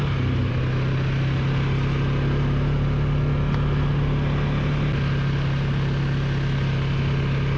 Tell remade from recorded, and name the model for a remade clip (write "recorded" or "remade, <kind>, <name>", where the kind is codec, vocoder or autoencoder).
recorded